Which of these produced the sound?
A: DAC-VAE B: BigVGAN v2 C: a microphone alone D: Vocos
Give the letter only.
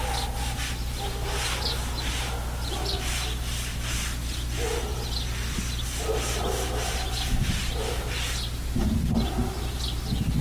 C